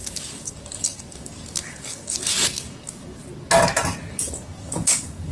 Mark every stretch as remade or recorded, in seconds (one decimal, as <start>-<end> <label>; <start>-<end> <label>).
0.0-3.2 remade; 3.2-4.1 recorded; 4.1-5.3 remade